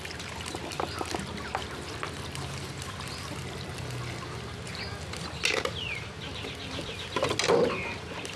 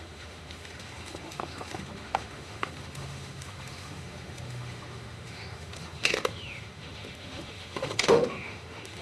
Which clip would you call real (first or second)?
first